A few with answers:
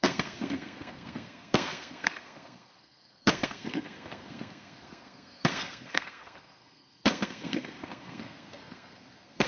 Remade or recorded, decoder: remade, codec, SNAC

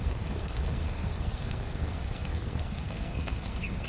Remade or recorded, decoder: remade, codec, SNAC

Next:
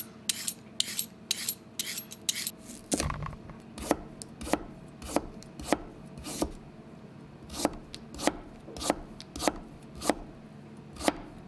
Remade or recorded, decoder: recorded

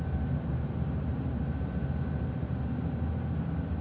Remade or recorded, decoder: recorded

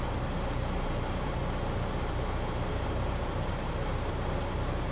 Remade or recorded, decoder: recorded